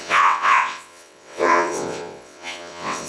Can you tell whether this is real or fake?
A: fake